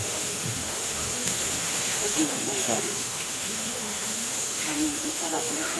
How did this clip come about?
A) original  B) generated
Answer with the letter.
B